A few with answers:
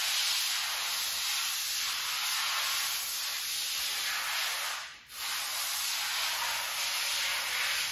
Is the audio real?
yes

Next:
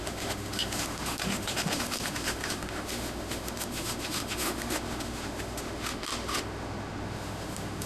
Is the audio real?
no